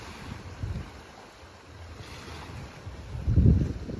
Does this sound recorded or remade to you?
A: recorded